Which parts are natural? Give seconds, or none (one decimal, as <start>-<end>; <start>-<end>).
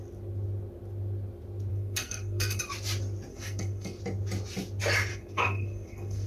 0.0-1.7; 2.6-3.3; 4.0-5.1